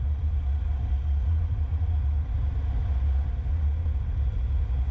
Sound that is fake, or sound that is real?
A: real